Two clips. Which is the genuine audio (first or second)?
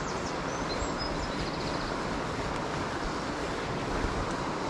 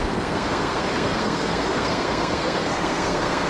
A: first